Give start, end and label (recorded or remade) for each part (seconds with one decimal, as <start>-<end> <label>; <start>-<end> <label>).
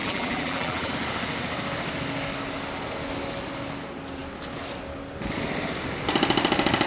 0.0-0.9 remade; 0.9-6.9 recorded